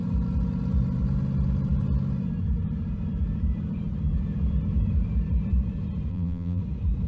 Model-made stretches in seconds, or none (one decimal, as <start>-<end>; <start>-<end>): 6.1-6.6